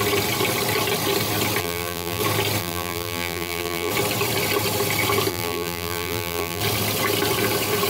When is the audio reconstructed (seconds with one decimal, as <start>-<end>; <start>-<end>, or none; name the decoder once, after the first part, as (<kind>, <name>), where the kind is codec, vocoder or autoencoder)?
1.6-2.2 (vocoder, BigVGAN v2); 2.6-3.9; 5.3-6.6